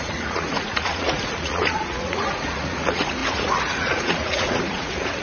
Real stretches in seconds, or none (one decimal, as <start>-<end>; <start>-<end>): none